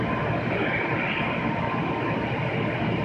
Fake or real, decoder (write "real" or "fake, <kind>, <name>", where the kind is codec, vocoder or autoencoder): real